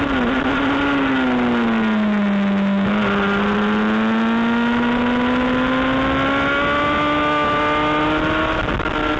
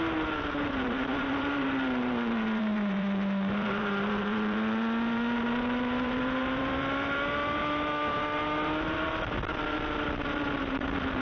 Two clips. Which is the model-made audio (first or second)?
second